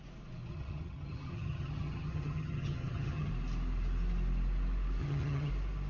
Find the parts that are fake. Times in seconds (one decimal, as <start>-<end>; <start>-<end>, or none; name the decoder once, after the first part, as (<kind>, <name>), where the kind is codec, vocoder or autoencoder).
0.5-3.3 (vocoder, HiFi-GAN); 5.0-5.5